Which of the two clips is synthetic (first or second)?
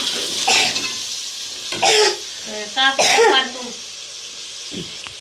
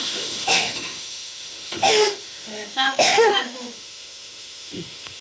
second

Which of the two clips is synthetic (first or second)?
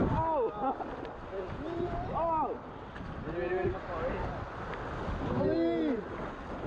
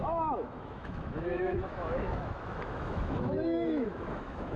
second